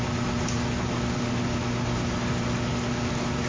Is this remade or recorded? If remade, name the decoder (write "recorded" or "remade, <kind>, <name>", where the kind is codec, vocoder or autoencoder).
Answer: recorded